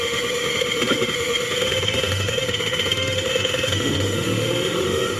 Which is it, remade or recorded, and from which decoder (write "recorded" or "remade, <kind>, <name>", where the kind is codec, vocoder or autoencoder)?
remade, autoencoder, DAC-VAE